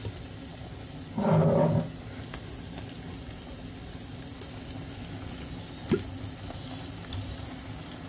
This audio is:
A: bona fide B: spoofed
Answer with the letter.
A